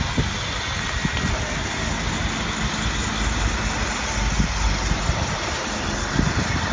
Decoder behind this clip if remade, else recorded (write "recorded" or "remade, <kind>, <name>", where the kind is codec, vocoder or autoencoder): recorded